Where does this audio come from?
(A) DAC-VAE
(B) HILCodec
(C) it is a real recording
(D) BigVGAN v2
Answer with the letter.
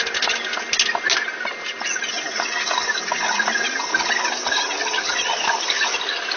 C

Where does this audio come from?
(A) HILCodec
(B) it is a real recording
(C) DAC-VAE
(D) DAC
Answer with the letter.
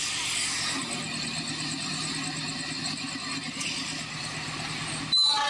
B